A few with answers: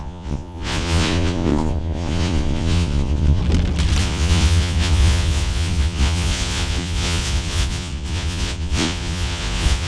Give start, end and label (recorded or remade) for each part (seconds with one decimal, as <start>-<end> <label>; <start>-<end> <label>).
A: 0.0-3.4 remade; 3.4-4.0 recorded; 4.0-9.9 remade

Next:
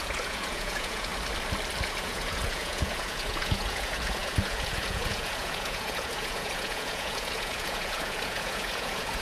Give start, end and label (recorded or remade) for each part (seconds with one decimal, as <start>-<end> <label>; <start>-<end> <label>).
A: 0.0-1.1 remade; 1.1-1.8 recorded; 1.8-9.2 remade

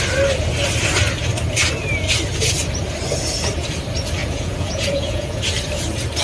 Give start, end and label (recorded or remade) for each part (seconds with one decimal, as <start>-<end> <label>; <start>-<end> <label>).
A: 0.0-4.2 recorded; 4.2-5.4 remade; 5.4-6.2 recorded